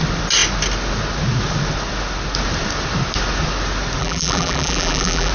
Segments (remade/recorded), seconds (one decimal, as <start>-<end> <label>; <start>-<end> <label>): 0.0-4.0 recorded; 4.0-5.3 remade